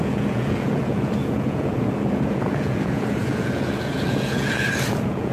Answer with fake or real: fake